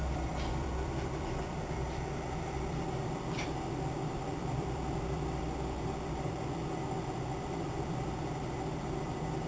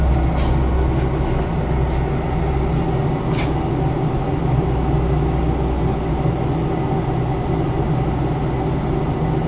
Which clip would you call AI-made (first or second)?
first